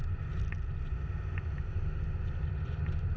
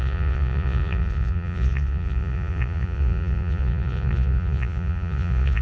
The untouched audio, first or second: first